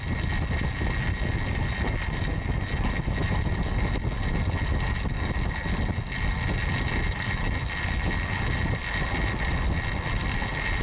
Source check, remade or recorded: recorded